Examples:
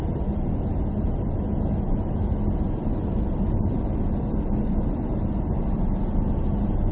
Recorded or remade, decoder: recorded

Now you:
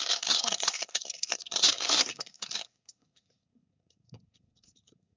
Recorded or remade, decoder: remade, codec, SNAC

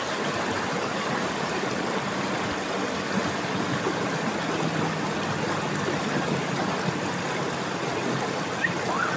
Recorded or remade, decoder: recorded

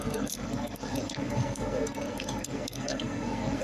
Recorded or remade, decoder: remade, codec, SNAC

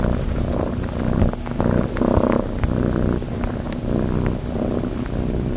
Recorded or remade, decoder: recorded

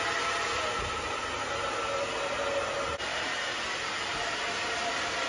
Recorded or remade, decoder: recorded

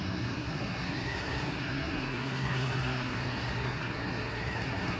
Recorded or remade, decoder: remade, codec, SNAC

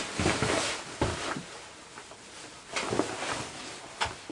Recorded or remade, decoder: recorded